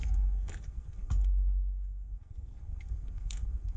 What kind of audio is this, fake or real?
fake